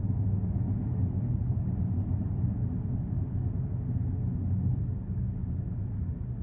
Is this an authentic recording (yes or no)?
yes